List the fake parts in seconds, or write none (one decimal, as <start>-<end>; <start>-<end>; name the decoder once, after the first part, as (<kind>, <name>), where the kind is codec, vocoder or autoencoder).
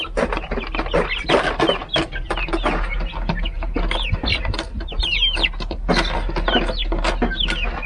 none